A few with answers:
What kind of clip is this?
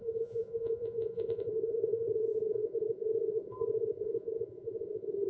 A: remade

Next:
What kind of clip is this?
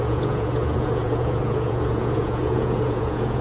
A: remade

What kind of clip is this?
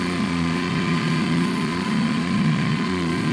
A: remade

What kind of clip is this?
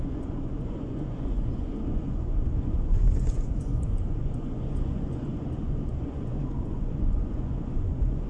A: remade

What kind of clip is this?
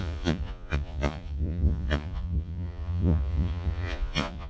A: remade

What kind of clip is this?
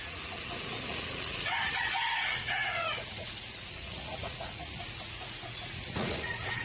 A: remade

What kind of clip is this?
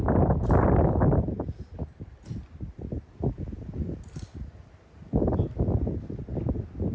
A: recorded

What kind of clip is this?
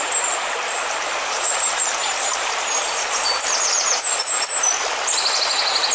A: recorded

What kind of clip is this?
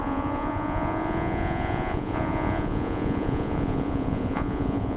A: remade